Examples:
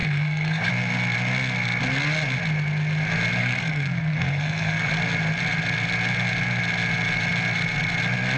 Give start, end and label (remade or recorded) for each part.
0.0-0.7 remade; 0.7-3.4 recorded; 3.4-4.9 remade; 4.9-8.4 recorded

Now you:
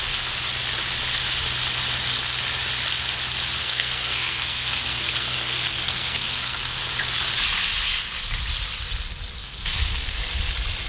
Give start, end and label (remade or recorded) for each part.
0.0-3.6 recorded; 3.6-6.8 remade; 6.8-9.4 recorded; 9.4-10.2 remade; 10.2-10.9 recorded